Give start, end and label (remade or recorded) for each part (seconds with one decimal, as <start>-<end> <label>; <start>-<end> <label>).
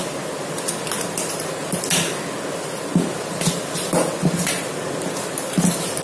0.0-6.0 recorded